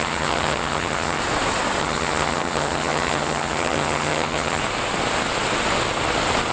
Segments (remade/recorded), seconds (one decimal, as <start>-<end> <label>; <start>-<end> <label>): 0.0-1.2 remade; 1.2-1.8 recorded; 1.8-4.6 remade; 4.6-6.5 recorded